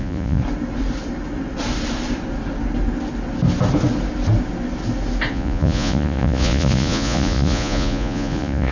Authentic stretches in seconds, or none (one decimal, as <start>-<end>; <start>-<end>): 0.4-5.3